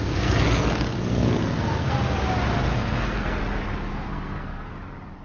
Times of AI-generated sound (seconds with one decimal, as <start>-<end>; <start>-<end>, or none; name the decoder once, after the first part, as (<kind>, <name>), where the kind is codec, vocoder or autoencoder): 0.0-2.0 (codec, SNAC); 2.7-3.4; 3.9-4.7

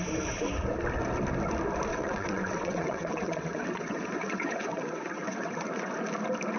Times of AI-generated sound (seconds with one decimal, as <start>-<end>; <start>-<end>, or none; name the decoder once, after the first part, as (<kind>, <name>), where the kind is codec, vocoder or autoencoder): 1.9-5.9 (vocoder, WaveNeXt)

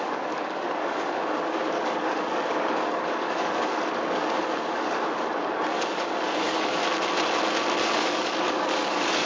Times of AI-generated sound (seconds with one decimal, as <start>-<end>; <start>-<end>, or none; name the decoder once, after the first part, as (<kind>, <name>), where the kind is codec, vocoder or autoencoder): 0.0-6.8 (codec, DAC); 7.8-9.3

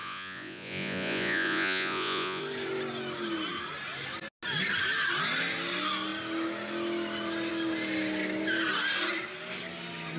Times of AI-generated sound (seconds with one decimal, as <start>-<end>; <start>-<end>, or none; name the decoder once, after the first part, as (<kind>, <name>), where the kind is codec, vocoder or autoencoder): 0.0-2.4 (vocoder, Vocos)